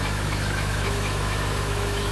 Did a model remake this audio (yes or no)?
yes